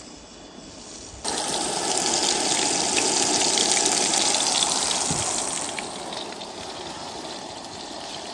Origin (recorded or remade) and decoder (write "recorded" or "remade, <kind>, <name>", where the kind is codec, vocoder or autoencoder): recorded